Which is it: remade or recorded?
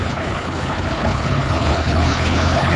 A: remade